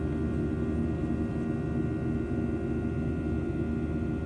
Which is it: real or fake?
real